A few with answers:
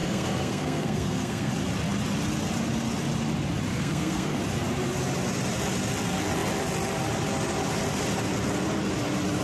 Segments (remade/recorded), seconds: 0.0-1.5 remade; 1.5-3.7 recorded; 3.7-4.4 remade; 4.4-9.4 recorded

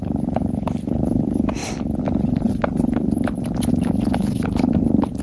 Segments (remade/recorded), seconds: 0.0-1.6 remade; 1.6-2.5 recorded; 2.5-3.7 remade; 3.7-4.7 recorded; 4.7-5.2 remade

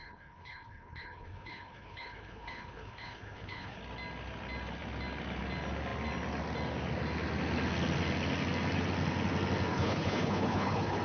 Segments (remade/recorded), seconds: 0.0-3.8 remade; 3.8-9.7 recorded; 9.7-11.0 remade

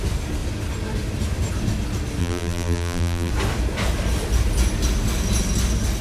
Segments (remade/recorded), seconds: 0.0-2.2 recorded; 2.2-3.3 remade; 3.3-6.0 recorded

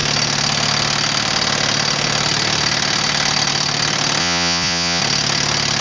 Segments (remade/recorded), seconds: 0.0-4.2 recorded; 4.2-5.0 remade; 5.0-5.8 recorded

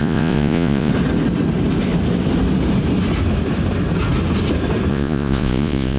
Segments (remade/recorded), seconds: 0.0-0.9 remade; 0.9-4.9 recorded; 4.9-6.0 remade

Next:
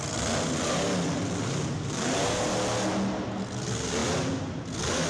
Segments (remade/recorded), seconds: 0.0-5.1 recorded